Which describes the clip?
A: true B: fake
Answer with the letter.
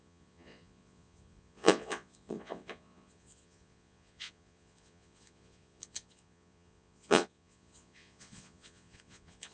B